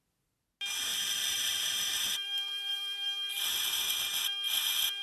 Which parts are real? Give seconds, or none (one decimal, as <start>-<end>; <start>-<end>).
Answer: 0.0-0.9; 3.9-5.0